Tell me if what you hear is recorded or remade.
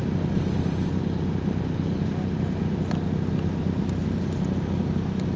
recorded